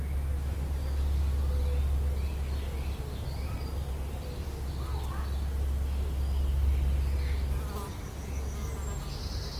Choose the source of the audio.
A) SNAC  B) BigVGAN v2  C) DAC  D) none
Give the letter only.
D